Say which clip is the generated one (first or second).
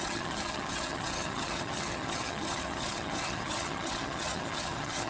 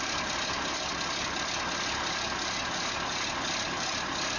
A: first